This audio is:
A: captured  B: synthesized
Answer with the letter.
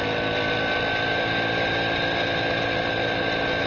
A